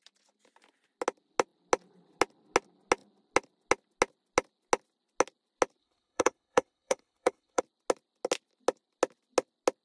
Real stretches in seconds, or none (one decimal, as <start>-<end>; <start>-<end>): 0.0-5.8; 7.6-9.8